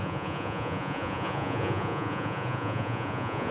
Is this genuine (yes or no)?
no